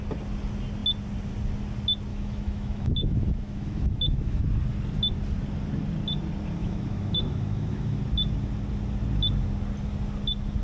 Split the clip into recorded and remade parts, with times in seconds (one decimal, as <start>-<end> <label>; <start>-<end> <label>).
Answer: 0.0-2.1 recorded; 2.1-4.4 remade; 4.4-6.6 recorded; 6.6-8.0 remade; 8.0-10.6 recorded